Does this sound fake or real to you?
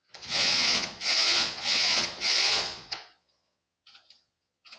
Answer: fake